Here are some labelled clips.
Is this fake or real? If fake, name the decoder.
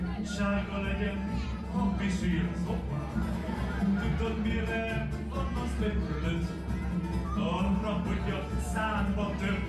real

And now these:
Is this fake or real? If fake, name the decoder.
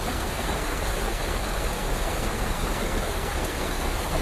fake, codec, SNAC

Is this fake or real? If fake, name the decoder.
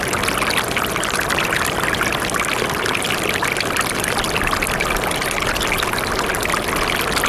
real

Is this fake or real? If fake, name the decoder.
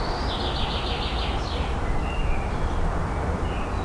real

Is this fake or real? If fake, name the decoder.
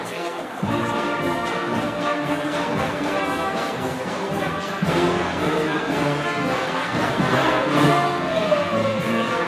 fake, codec, SNAC